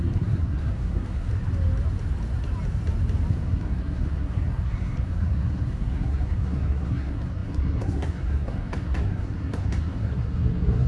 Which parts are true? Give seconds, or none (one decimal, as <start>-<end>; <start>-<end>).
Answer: 1.3-3.3